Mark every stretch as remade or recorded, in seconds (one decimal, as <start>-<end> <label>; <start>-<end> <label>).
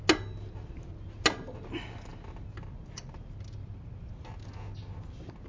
0.0-5.5 recorded